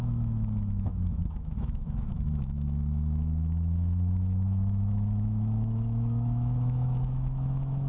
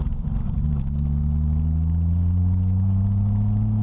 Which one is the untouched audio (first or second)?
second